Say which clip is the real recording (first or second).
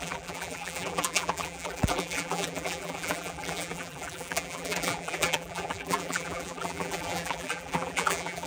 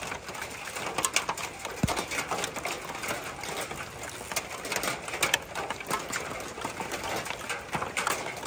second